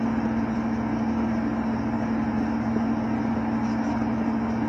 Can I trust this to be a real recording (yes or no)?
yes